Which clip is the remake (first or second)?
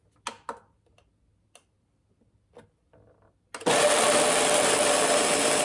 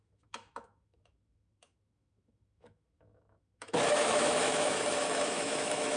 second